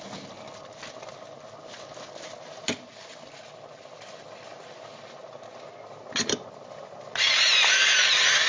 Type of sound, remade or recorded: recorded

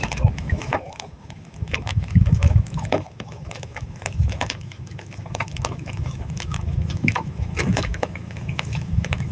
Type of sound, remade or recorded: remade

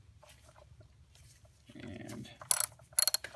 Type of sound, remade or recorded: recorded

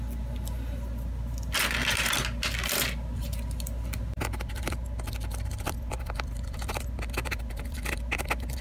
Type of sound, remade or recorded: recorded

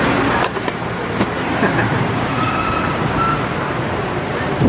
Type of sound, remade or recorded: remade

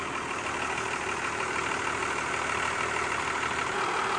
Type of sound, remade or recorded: recorded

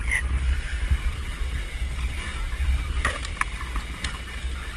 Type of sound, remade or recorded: recorded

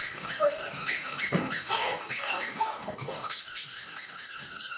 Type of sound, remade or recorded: remade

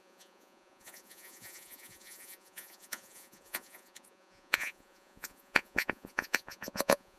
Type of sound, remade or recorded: remade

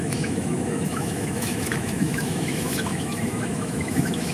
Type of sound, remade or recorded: remade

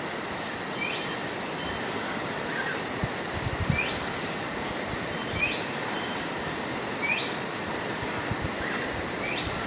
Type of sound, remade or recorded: recorded